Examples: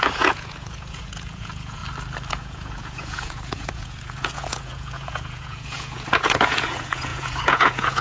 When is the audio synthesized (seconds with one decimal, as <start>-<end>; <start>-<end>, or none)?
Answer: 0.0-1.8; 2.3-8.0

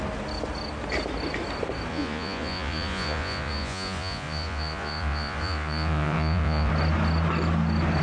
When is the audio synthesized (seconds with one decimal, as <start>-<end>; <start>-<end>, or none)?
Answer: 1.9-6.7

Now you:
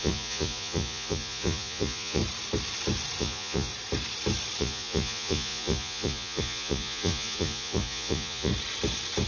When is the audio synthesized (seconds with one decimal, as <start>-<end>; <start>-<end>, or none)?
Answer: 0.0-2.2; 3.2-3.7; 4.6-8.5

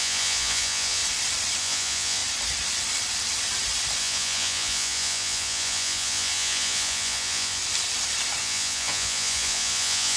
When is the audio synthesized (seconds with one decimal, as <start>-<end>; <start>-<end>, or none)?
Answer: 0.0-1.0; 1.6-2.2; 4.0-7.6; 8.4-10.2

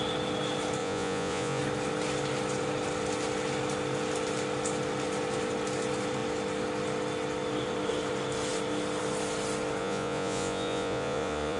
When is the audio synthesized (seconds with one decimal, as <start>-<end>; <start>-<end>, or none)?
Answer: 0.8-1.6; 9.8-11.6

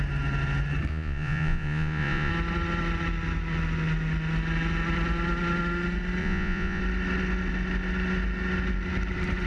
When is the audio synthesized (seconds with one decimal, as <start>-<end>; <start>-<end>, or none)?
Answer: 0.9-2.3; 6.2-6.8